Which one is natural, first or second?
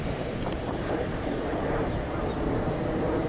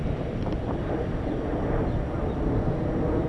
second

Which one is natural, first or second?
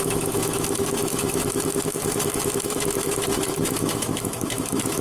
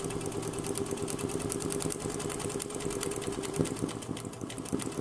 second